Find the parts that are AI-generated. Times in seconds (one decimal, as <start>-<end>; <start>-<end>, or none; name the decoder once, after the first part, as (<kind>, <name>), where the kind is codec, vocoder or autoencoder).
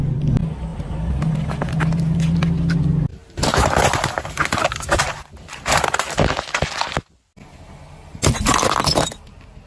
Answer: 0.7-1.3 (vocoder, BigVGAN v2); 3.2-6.6